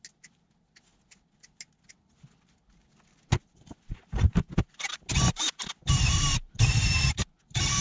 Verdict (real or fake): real